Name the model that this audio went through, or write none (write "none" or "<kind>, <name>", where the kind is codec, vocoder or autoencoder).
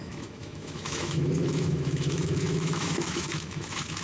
autoencoder, DAC-VAE